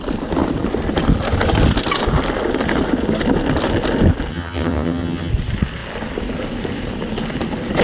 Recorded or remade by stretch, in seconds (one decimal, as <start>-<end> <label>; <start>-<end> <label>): 0.0-4.3 recorded; 4.3-5.3 remade; 5.3-7.8 recorded